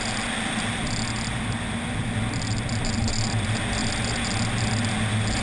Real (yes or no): yes